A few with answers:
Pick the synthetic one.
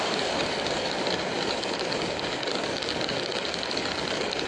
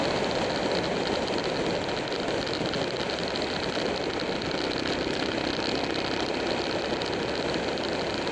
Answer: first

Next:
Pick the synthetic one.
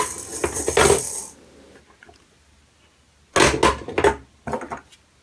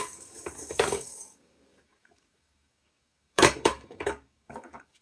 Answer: second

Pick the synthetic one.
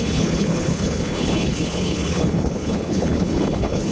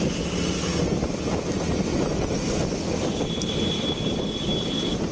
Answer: first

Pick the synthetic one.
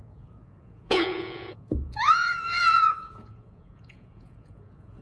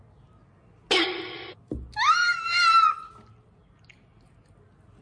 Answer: first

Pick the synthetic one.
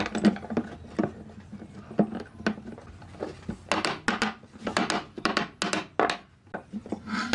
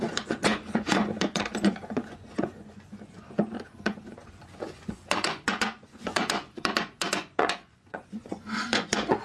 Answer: second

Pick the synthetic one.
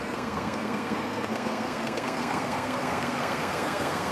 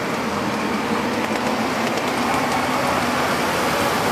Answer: first